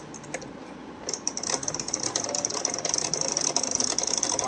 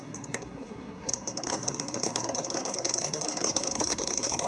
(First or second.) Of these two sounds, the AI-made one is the second